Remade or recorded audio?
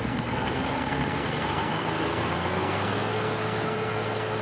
remade